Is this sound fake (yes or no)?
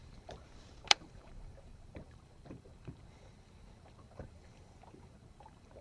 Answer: yes